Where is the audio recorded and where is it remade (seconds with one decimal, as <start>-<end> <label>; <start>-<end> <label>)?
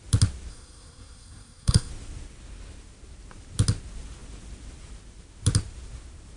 0.0-0.5 recorded; 0.5-1.9 remade; 1.9-6.4 recorded